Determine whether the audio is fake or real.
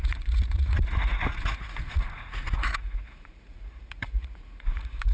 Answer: fake